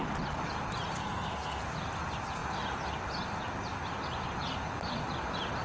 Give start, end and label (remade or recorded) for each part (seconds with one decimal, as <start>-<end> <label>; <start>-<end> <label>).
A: 0.0-1.0 recorded; 1.0-1.6 remade; 1.6-5.6 recorded